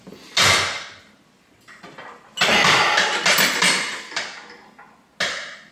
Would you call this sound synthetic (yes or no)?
no